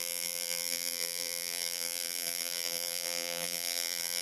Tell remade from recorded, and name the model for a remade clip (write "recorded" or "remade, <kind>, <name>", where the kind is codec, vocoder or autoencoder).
remade, vocoder, BigVGAN v2